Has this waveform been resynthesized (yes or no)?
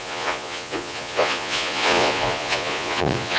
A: yes